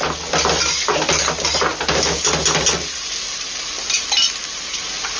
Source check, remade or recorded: recorded